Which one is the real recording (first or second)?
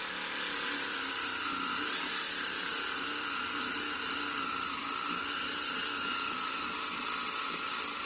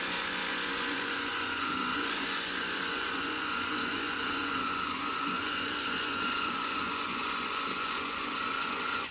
first